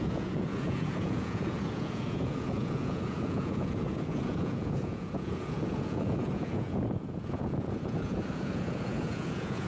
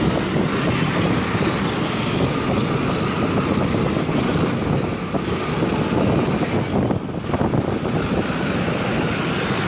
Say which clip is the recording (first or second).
second